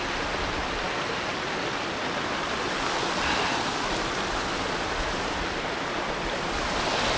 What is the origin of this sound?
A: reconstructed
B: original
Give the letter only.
B